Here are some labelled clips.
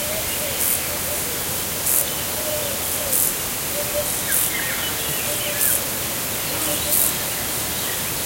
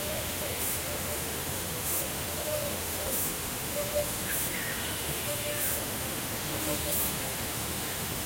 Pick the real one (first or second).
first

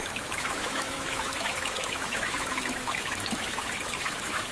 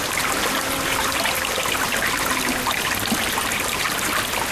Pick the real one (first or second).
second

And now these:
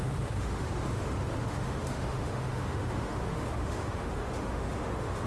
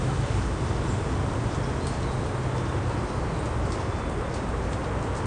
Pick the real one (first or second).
second